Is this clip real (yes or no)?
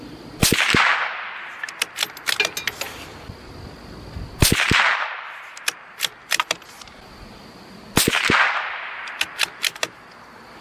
yes